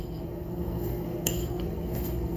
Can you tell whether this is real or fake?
fake